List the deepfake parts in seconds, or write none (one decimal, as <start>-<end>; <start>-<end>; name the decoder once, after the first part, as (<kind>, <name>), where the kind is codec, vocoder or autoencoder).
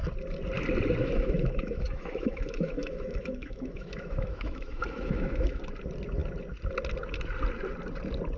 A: 1.0-5.6 (autoencoder, DAC-VAE)